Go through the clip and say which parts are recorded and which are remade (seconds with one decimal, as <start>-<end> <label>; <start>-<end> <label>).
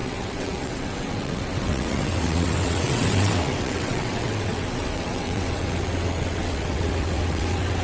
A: 0.0-7.8 remade